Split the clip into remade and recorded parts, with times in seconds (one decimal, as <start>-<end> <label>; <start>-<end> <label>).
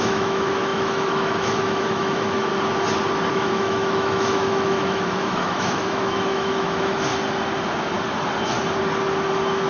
0.0-2.5 remade; 2.5-3.3 recorded; 3.3-7.1 remade; 7.1-9.7 recorded